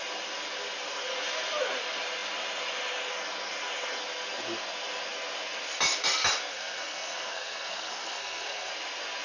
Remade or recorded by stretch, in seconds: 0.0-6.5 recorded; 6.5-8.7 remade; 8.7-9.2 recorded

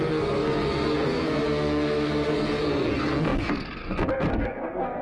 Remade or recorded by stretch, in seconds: 0.0-5.0 remade

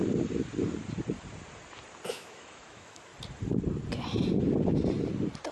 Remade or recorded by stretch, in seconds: 0.0-2.1 recorded; 2.1-3.1 remade; 3.1-5.5 recorded

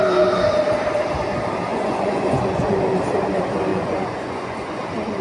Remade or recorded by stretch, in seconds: 0.0-1.7 recorded; 1.7-2.8 remade; 2.8-3.7 recorded; 3.7-4.8 remade; 4.8-5.2 recorded

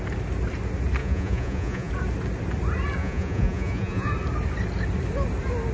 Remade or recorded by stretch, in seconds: 0.0-1.0 recorded; 1.0-1.9 remade; 1.9-3.0 recorded; 3.0-4.1 remade; 4.1-5.7 recorded

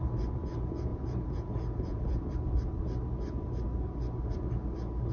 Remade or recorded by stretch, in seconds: 0.0-0.9 recorded; 0.9-2.2 remade; 2.2-5.1 recorded

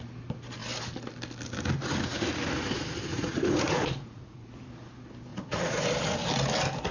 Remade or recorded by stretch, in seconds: 0.0-3.1 recorded; 3.1-4.5 remade; 4.5-5.3 recorded; 5.3-5.8 remade; 5.8-6.9 recorded

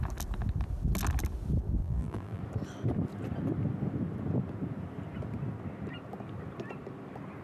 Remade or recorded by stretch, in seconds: 0.0-1.8 recorded; 1.8-2.4 remade; 2.4-7.4 recorded